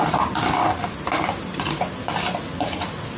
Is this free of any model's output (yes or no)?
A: yes